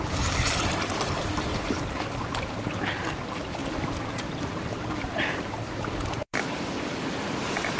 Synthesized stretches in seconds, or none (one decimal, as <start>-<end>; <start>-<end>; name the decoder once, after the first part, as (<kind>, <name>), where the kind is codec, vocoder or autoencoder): 1.5-3.2 (vocoder, BigVGAN v2); 3.6-5.8; 6.2-7.3